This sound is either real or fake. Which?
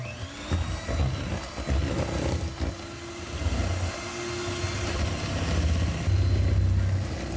real